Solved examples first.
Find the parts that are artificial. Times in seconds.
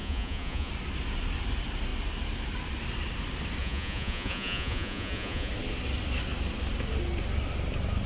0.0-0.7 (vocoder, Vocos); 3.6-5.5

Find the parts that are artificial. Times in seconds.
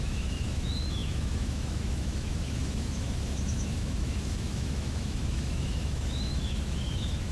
0.0-7.3 (autoencoder, DAC-VAE)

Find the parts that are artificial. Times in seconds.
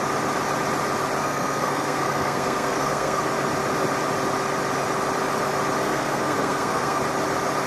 1.2-3.2 (codec, SNAC); 5.8-7.0